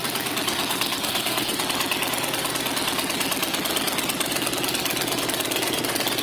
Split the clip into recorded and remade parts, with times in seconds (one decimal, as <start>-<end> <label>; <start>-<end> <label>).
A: 0.0-0.7 recorded; 0.7-1.6 remade; 1.6-6.2 recorded